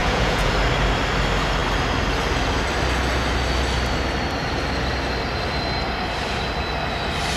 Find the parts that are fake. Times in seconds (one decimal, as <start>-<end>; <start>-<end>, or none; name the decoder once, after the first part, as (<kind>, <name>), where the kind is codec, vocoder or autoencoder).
0.0-0.5 (vocoder, Vocos)